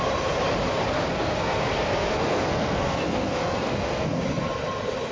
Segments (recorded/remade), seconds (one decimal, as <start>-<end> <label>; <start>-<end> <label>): 0.0-1.1 recorded; 1.1-4.2 remade; 4.2-5.1 recorded